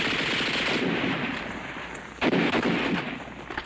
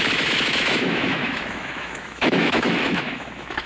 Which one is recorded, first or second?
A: first